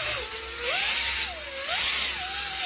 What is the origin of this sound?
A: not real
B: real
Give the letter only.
B